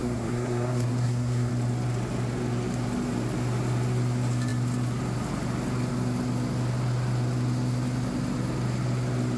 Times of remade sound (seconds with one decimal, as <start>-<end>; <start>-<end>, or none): 0.0-1.5